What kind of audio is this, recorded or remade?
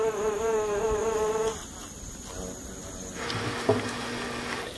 recorded